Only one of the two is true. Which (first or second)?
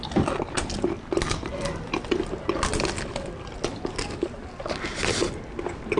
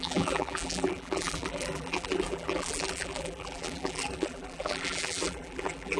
first